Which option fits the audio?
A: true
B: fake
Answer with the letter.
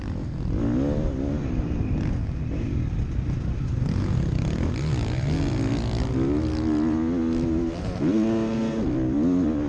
A